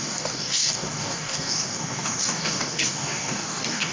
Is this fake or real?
fake